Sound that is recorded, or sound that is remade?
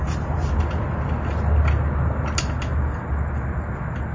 recorded